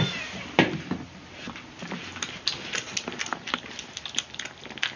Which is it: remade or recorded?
recorded